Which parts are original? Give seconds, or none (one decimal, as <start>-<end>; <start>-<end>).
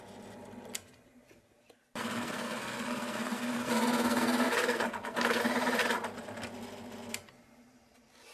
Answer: 0.0-2.0; 5.4-8.3